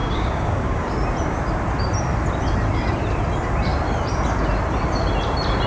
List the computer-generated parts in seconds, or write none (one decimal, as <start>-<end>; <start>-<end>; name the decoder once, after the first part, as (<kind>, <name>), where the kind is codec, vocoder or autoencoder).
0.0-0.9 (codec, DAC)